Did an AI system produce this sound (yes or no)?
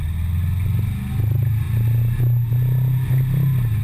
no